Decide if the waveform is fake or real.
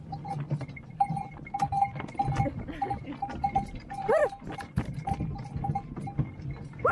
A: real